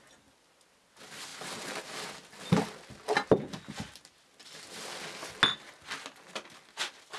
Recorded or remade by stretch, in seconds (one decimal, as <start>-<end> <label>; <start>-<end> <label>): 0.0-7.2 recorded